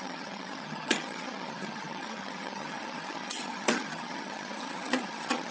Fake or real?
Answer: fake